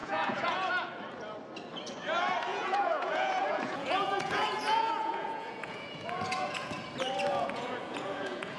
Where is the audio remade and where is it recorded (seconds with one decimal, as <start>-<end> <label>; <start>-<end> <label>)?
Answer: 0.0-0.7 remade; 0.7-2.5 recorded; 2.5-6.7 remade; 6.7-7.3 recorded; 7.3-8.6 remade